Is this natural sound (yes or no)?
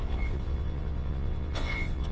no